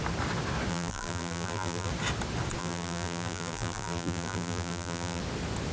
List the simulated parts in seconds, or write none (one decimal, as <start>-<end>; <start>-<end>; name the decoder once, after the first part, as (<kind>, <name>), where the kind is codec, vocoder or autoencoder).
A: 0.7-1.9 (vocoder, BigVGAN v2); 2.6-5.2

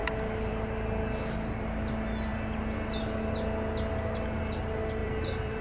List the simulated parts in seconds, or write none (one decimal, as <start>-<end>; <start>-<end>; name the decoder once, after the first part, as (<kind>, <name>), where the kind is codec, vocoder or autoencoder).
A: 5.0-5.6 (vocoder, BigVGAN v2)

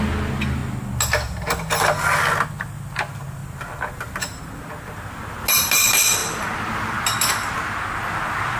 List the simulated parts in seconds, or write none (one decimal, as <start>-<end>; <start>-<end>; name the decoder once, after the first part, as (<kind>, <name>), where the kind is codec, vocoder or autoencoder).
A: none

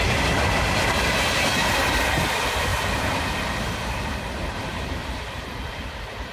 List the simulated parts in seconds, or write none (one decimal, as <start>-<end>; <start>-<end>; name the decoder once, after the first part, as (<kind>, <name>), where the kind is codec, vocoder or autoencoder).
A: none

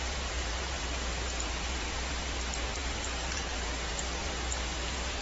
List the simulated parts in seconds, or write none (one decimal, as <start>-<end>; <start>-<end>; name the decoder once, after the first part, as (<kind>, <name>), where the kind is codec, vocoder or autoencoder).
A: 0.0-5.2 (vocoder, BigVGAN v2)

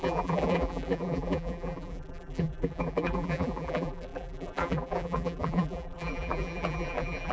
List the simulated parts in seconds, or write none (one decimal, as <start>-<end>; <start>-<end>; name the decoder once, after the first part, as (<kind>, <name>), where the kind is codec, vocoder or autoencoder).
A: 0.0-7.3 (vocoder, BigVGAN v2)

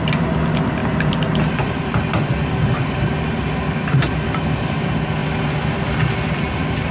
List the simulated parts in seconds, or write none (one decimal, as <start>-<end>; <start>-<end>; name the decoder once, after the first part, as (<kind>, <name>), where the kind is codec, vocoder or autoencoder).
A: 0.8-4.4 (vocoder, BigVGAN v2)